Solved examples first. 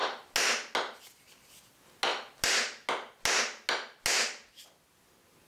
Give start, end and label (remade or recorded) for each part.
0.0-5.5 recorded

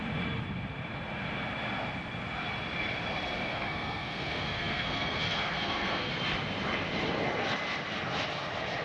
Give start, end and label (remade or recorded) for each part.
0.0-3.5 recorded; 3.5-6.1 remade; 6.1-8.8 recorded

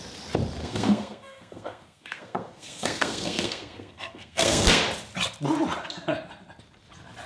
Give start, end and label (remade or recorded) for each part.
0.0-0.6 recorded; 0.6-4.8 remade; 4.8-7.3 recorded

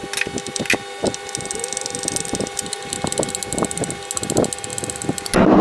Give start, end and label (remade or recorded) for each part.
0.0-5.6 recorded